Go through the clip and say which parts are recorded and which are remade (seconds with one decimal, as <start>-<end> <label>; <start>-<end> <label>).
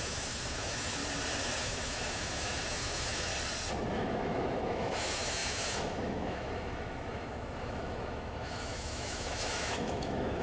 0.0-1.0 remade; 1.0-1.6 recorded; 1.6-3.3 remade; 3.3-3.9 recorded; 3.9-10.4 remade